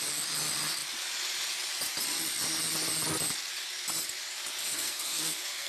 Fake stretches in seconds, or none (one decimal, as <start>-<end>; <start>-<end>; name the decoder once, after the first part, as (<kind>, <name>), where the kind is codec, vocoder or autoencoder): 4.7-5.7 (codec, SNAC)